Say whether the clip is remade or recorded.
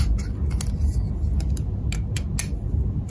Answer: recorded